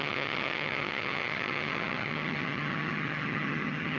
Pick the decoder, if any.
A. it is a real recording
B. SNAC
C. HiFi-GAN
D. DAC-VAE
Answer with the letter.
C